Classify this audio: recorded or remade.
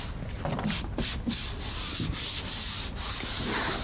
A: recorded